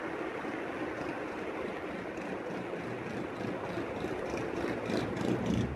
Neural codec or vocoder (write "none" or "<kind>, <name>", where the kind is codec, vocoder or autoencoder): none